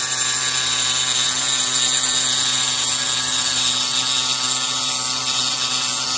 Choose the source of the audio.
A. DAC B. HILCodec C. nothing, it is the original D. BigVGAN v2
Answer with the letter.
C